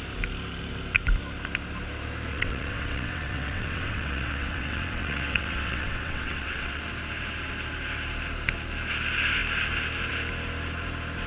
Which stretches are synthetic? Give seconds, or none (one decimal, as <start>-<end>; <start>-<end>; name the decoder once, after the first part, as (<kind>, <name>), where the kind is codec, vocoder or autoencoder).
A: 2.3-6.8 (vocoder, WaveNeXt)